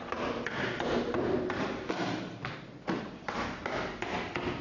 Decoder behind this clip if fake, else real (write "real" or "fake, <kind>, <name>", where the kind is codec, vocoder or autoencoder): real